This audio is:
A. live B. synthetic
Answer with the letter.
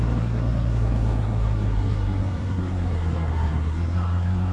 B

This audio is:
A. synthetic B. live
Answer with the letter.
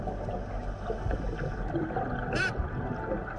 B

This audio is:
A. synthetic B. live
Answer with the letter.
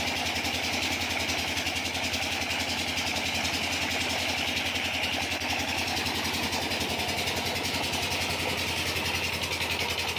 B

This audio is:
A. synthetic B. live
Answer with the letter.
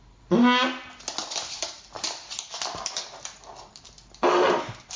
B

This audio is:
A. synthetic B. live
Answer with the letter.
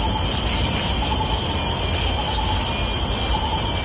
B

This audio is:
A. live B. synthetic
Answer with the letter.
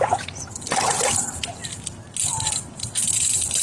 A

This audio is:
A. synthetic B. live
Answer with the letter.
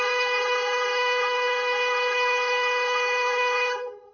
A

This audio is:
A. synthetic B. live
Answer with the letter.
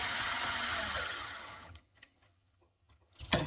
A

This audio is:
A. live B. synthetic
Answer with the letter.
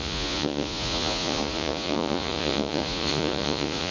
B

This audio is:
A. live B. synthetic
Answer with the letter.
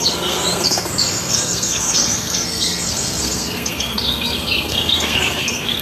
B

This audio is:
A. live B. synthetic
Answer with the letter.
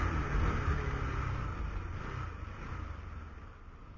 A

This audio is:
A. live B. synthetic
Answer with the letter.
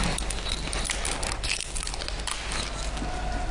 A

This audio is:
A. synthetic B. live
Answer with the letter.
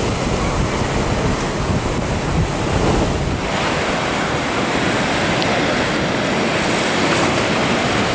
B